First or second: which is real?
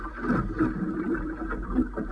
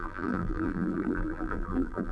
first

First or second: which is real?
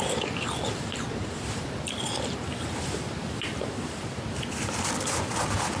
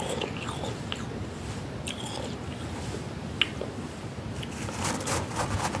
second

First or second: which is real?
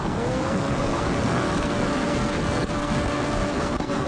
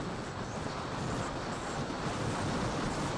second